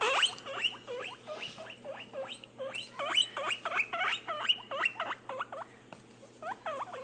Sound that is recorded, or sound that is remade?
recorded